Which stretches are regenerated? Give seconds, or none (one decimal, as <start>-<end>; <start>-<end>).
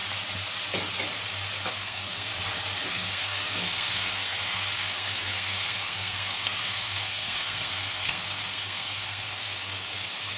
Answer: 1.7-2.3; 2.9-10.4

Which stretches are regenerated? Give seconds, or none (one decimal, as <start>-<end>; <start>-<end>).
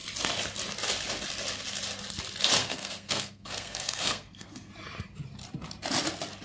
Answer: 2.6-4.7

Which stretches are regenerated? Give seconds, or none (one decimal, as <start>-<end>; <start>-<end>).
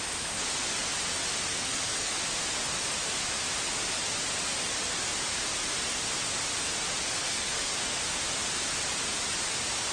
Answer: 1.5-2.1; 7.2-8.0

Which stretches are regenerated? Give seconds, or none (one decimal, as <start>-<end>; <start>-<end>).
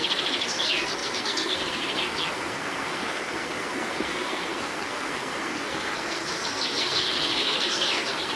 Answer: 0.0-8.4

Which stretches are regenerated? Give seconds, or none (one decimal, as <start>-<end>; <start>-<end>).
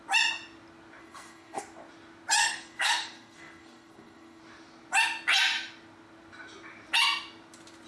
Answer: 1.0-1.6; 2.4-4.4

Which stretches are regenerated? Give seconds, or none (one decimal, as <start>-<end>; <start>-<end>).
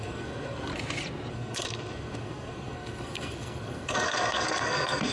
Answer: 0.0-0.7; 1.3-5.1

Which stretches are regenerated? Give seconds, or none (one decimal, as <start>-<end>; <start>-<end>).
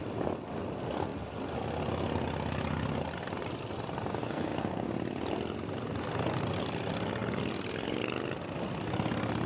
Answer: 4.2-4.9